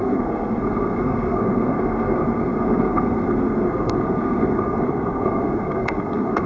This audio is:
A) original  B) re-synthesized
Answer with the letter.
B